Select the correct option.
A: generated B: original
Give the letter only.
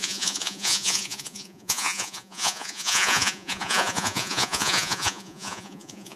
A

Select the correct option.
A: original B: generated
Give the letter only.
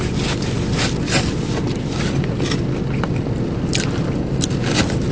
A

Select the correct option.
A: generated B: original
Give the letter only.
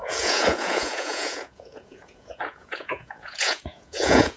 A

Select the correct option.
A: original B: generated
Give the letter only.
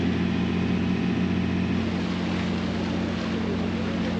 A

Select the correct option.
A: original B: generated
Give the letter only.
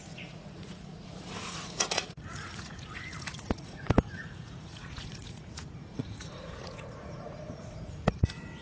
B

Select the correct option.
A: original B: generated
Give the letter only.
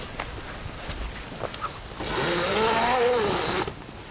A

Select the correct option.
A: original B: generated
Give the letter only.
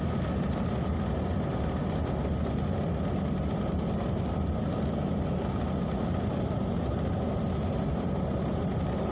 A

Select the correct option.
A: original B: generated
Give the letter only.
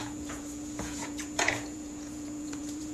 B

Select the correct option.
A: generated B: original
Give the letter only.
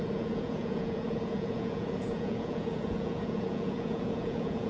A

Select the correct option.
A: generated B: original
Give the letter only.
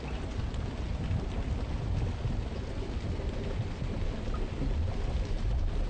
B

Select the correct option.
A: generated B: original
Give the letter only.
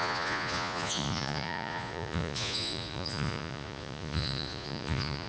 A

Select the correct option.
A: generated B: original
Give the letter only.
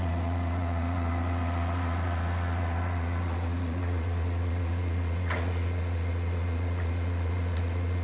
A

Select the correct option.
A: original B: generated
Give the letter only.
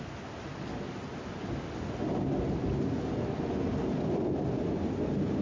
A